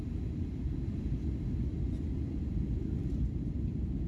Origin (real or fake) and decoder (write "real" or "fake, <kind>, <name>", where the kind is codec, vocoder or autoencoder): fake, vocoder, BigVGAN v2